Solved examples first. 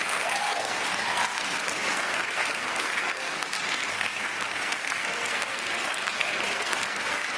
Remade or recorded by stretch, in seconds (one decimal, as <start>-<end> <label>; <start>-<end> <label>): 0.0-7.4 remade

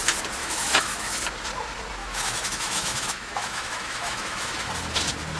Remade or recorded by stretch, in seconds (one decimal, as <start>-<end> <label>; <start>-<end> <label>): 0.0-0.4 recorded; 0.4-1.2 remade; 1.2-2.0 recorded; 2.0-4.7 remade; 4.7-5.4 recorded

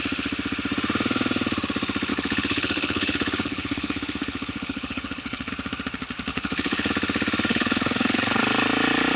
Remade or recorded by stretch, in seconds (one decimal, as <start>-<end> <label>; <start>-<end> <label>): 0.0-2.1 recorded; 2.1-5.5 remade; 5.5-6.3 recorded; 6.3-6.9 remade; 6.9-7.5 recorded; 7.5-8.4 remade; 8.4-9.2 recorded

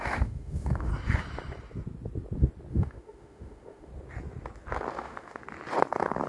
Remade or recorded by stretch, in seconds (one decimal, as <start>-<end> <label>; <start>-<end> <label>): 0.0-0.9 remade; 0.9-2.7 recorded; 2.7-3.9 remade; 3.9-4.9 recorded; 4.9-5.4 remade; 5.4-6.3 recorded